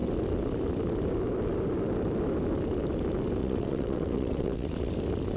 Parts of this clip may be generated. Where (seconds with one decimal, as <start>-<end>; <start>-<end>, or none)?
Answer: 3.4-4.9